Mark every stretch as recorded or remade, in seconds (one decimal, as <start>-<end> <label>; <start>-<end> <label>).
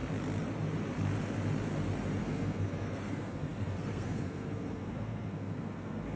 0.0-2.2 recorded; 2.2-6.2 remade